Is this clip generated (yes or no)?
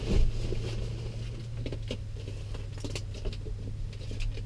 no